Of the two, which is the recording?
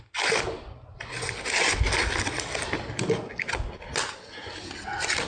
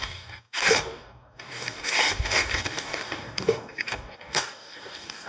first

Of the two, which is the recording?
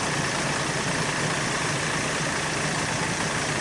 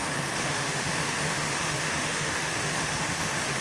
first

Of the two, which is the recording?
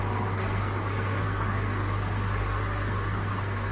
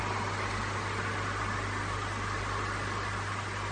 second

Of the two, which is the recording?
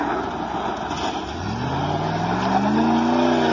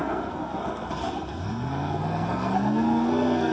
first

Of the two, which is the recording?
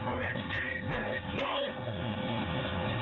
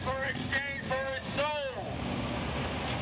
second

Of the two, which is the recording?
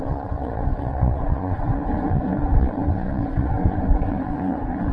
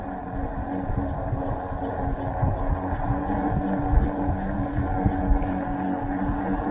second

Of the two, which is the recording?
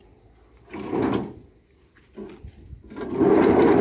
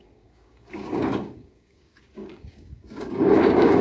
first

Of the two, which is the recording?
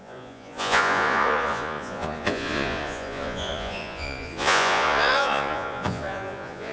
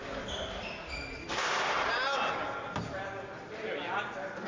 second